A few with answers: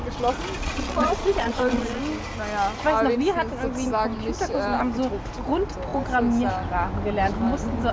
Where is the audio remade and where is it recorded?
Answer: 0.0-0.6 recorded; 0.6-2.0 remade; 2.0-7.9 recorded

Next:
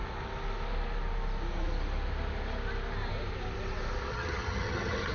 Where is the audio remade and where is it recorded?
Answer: 0.0-4.1 recorded; 4.1-5.1 remade

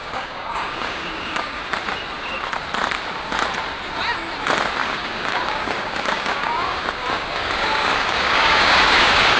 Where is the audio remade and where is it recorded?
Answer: 0.0-1.6 remade; 1.6-4.8 recorded; 4.8-9.4 remade

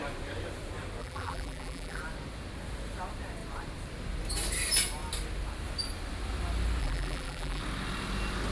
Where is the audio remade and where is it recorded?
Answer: 0.0-1.0 recorded; 1.0-2.0 remade; 2.0-6.8 recorded; 6.8-7.6 remade; 7.6-8.5 recorded